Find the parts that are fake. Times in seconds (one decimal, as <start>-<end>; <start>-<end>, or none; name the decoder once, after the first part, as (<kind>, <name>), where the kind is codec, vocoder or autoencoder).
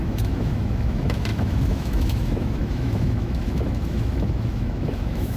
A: 0.0-5.4 (autoencoder, DAC-VAE)